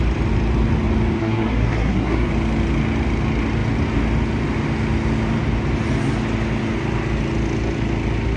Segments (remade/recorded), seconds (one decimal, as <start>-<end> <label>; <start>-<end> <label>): 0.0-1.2 recorded; 1.2-2.3 remade; 2.3-8.4 recorded